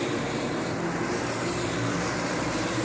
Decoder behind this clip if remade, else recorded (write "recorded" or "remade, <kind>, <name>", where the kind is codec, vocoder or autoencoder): remade, vocoder, BigVGAN v2